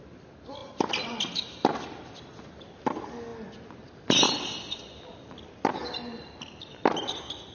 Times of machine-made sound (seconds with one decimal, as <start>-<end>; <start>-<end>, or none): none